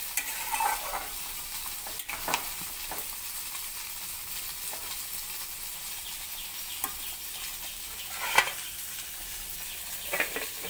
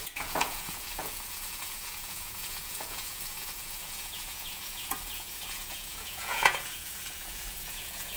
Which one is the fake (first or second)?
second